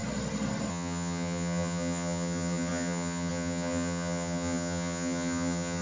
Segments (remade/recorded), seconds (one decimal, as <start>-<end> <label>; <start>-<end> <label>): 0.0-0.7 recorded; 0.7-5.8 remade